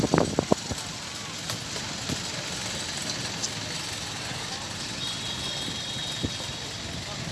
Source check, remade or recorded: recorded